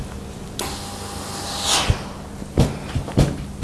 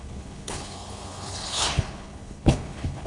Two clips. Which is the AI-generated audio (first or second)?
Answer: second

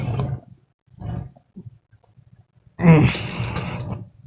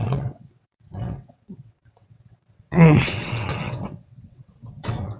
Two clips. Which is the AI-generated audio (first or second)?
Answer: second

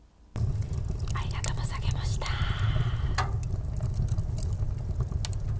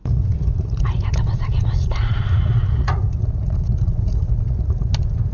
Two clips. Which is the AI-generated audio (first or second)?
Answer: second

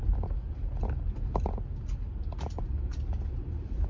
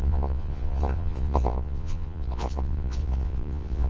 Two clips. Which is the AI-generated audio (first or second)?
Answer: second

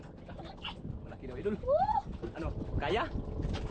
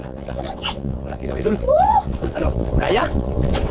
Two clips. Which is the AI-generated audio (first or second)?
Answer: second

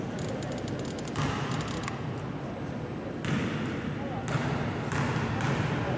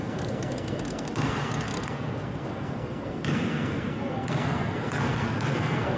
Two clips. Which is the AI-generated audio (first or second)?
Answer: second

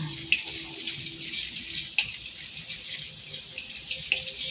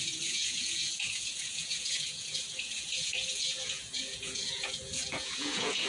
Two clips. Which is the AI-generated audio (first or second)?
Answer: second